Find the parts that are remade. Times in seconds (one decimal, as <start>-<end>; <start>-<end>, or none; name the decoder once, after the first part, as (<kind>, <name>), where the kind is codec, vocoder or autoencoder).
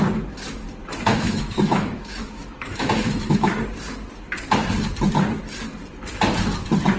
1.1-3.5 (autoencoder, DAC-VAE)